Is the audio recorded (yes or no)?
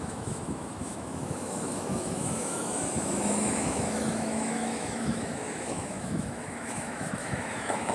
no